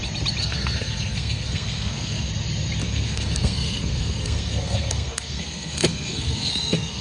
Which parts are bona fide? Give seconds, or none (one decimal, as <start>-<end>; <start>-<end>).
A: 0.0-0.4; 2.3-2.8